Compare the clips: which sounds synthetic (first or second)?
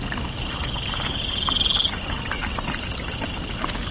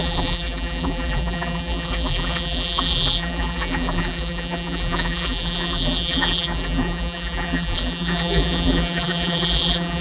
second